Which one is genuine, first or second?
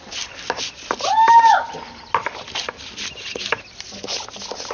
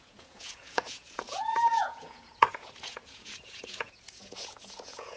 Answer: first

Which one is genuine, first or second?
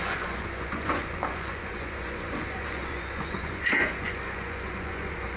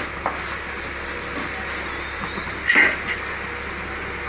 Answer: second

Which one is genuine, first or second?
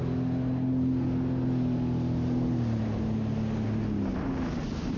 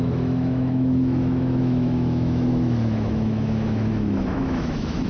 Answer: first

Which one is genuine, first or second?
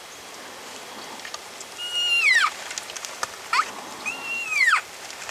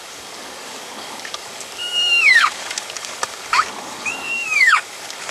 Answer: first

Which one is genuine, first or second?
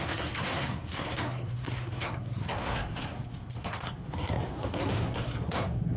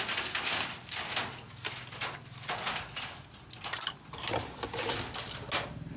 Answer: second